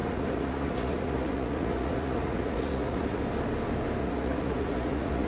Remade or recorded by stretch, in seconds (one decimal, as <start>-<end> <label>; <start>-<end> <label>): 0.0-3.2 remade; 3.2-4.0 recorded; 4.0-5.3 remade

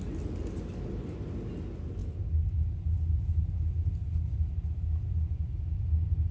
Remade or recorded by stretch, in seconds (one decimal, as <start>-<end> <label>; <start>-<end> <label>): 0.0-6.3 recorded

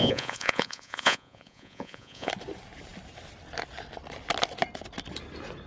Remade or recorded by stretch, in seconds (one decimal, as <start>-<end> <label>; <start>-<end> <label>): 0.0-2.3 remade; 2.3-5.7 recorded

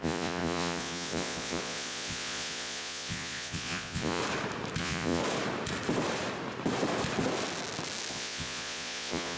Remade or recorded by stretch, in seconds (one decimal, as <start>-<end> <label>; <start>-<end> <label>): 0.0-4.2 remade; 4.2-4.8 recorded; 4.8-5.2 remade; 5.2-8.1 recorded; 8.1-9.4 remade

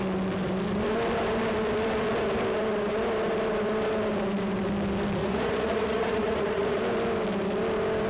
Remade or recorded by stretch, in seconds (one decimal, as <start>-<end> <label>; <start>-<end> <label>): 0.0-5.2 recorded; 5.2-6.8 remade; 6.8-8.1 recorded

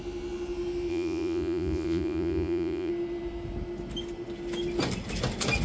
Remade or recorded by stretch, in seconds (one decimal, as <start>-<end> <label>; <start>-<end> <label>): 0.0-0.9 recorded; 0.9-2.9 remade; 2.9-5.6 recorded

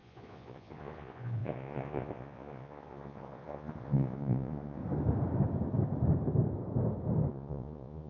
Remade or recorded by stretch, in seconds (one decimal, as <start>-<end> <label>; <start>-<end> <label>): 0.0-4.8 remade; 4.8-7.3 recorded; 7.3-8.1 remade